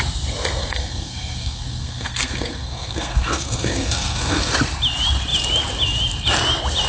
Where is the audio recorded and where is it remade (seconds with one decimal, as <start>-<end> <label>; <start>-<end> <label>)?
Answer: 0.0-0.6 recorded; 0.6-4.5 remade; 4.5-6.9 recorded